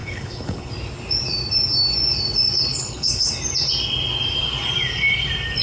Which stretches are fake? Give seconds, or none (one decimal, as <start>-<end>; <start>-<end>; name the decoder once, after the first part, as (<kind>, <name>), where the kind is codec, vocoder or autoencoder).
0.0-0.7 (codec, HILCodec); 2.7-3.3